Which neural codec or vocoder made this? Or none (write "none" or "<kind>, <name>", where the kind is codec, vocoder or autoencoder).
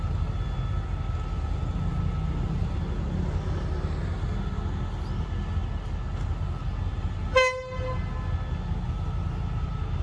none